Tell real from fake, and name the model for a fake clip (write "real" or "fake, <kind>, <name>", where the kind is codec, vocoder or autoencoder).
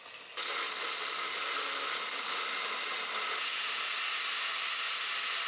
real